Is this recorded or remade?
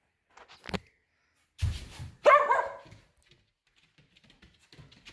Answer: recorded